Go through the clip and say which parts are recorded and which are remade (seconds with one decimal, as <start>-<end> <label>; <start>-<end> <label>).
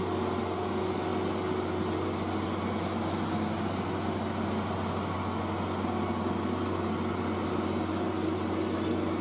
0.0-9.2 recorded